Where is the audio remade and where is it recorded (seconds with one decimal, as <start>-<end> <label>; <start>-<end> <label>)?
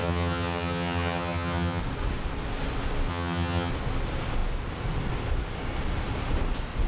0.0-1.8 remade; 1.8-3.1 recorded; 3.1-3.7 remade; 3.7-6.9 recorded